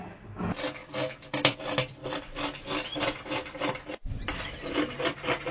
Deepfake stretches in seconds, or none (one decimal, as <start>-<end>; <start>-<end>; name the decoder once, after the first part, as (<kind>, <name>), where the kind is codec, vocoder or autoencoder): 0.8-1.5 (vocoder, BigVGAN v2)